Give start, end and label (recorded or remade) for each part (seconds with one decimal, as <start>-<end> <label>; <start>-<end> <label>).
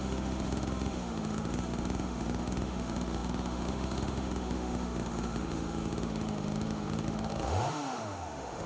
0.0-8.7 remade